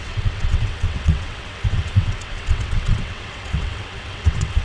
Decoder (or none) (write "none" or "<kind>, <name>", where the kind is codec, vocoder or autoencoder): vocoder, WaveNeXt